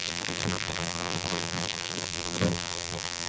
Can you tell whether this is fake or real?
fake